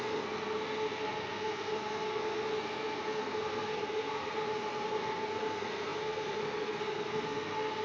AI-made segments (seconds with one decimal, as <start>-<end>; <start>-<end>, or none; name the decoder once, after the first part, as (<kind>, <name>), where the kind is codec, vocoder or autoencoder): 0.0-7.8 (codec, SNAC)